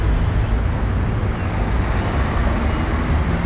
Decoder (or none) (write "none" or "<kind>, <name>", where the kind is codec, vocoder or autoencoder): none